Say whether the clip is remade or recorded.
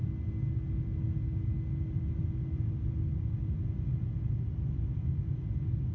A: recorded